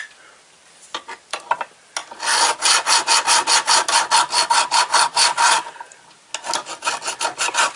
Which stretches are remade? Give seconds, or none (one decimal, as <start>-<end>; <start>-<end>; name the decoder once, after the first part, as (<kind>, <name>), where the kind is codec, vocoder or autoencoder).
none